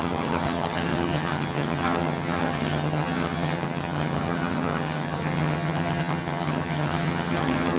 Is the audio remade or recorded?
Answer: remade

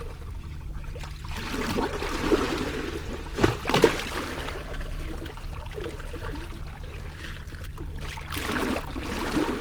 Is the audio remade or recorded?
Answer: recorded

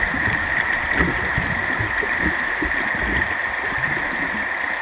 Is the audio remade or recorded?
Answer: recorded